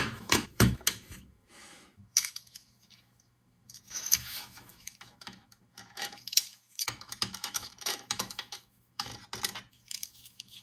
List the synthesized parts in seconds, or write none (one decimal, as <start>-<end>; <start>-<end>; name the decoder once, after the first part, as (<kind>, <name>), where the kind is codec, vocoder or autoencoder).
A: 0.0-9.1 (autoencoder, DAC-VAE); 9.7-10.6